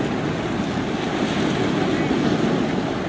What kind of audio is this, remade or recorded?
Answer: recorded